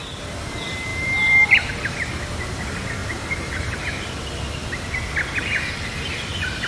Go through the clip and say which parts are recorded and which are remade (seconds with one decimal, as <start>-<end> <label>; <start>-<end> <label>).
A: 0.0-0.9 recorded; 0.9-1.7 remade; 1.7-3.0 recorded; 3.0-3.8 remade; 3.8-6.7 recorded